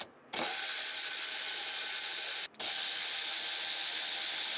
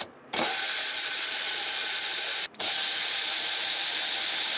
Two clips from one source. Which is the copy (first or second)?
second